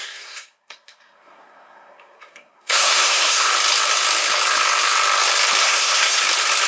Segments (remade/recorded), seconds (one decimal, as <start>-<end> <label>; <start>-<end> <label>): 0.0-3.5 remade; 3.5-5.6 recorded; 5.6-6.2 remade; 6.2-6.7 recorded